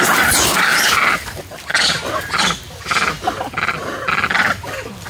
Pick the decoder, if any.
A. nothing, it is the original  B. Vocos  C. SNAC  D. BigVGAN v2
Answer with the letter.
A